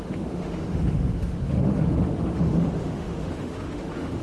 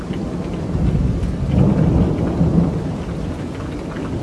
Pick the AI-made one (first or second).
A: first